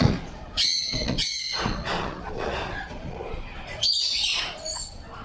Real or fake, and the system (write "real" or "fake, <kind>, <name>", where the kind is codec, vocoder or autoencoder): fake, vocoder, Vocos